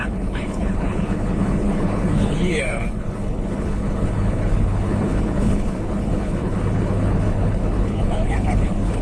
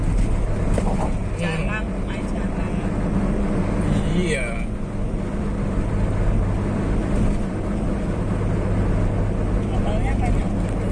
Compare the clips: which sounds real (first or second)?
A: second